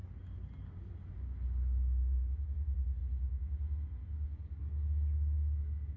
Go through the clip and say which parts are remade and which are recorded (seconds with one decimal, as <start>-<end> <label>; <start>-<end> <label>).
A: 0.0-6.0 recorded